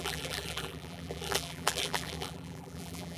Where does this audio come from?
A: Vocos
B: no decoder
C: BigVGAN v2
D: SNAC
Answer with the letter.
C